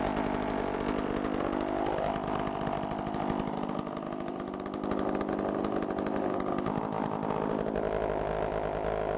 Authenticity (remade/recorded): recorded